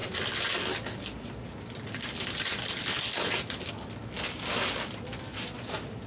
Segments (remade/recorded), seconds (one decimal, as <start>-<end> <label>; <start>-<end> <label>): 0.0-6.1 recorded